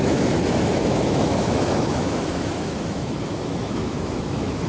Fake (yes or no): yes